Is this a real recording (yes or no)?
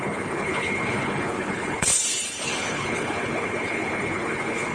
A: no